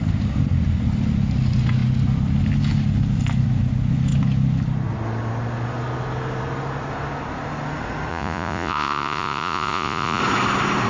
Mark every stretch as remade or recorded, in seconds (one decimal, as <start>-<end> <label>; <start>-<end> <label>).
0.0-8.1 recorded; 8.1-10.2 remade; 10.2-10.9 recorded